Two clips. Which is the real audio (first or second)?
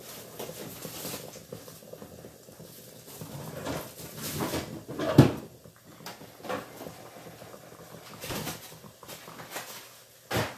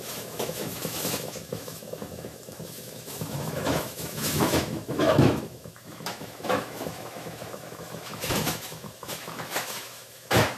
first